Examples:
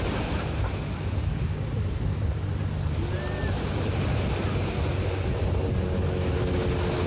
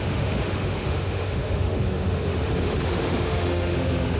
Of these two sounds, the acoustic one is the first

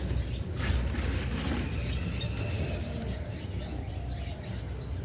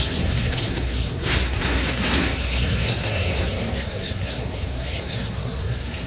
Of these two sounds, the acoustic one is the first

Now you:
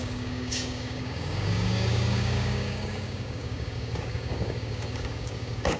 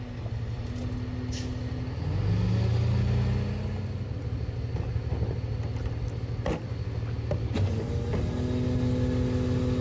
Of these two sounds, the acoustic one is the second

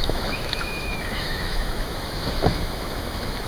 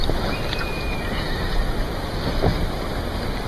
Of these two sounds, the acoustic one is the second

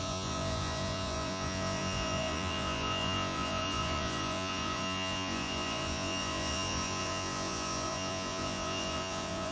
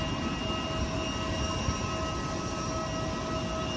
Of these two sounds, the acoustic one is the second